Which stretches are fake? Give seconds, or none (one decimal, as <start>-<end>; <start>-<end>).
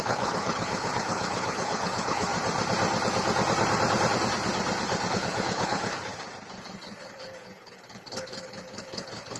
0.0-2.3; 5.1-6.1; 6.6-9.4